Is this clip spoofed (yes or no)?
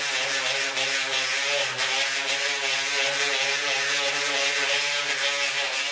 no